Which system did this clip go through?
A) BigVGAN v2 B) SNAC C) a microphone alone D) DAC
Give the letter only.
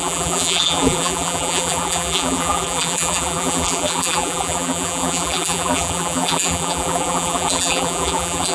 A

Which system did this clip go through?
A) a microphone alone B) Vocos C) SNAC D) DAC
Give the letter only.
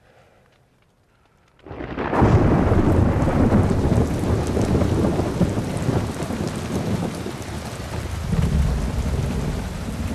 A